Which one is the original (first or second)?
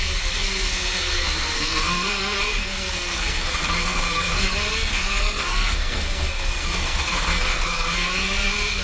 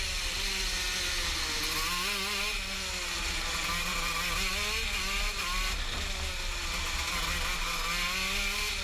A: second